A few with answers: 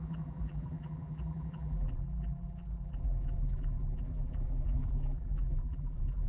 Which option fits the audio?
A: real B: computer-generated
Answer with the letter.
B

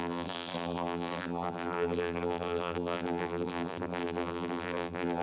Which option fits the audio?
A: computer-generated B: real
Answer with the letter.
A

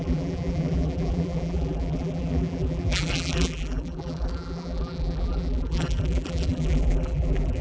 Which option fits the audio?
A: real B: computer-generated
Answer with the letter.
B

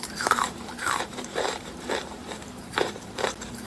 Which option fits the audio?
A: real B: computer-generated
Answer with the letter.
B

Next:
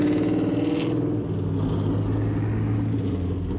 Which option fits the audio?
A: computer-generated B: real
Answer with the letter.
B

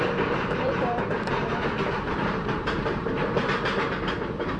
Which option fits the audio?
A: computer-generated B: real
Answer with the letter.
A